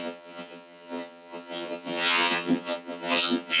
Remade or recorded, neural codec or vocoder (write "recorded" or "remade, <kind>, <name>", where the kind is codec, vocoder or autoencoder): remade, vocoder, HiFi-GAN